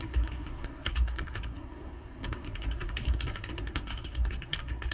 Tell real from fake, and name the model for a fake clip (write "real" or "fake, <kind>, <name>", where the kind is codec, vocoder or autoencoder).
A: fake, codec, SNAC